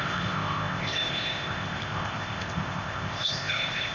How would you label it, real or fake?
fake